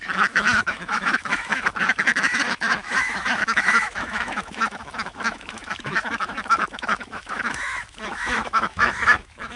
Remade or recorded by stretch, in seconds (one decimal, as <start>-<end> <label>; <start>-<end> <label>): 0.0-9.6 remade